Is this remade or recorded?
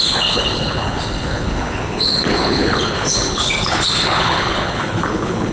remade